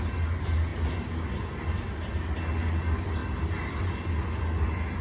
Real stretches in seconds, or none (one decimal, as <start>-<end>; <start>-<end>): 0.0-5.0